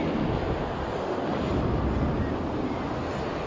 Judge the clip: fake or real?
real